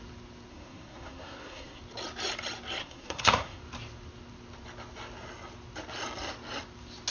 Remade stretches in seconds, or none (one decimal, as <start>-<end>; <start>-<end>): 0.5-1.8; 2.8-3.6

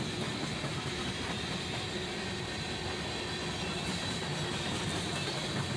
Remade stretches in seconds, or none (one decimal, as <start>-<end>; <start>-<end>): none

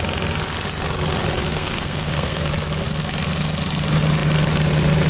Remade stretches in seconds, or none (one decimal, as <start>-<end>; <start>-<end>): 1.5-2.5